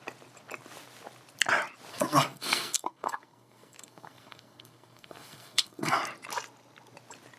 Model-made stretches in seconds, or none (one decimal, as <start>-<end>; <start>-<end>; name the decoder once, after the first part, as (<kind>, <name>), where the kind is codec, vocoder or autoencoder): 1.9-6.0 (codec, SNAC)

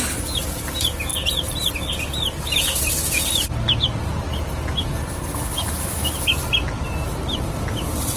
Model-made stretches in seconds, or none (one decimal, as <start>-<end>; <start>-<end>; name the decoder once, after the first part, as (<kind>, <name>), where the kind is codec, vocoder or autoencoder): none

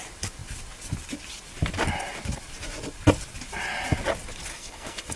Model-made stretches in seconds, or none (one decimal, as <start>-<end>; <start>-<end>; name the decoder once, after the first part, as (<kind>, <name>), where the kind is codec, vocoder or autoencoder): 4.5-5.2 (codec, SNAC)

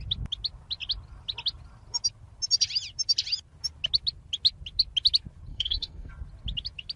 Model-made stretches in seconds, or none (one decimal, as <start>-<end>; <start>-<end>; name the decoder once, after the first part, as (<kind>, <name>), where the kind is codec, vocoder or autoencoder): 5.5-6.1 (codec, SNAC)

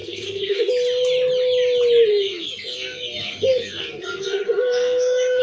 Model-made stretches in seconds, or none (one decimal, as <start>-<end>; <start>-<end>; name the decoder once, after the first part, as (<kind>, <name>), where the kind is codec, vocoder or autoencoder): 0.0-0.7 (codec, SNAC); 2.1-5.4